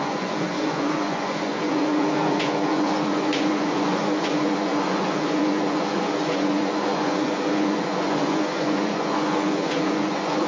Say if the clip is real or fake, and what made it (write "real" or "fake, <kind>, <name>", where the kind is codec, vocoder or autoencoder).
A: fake, vocoder, Vocos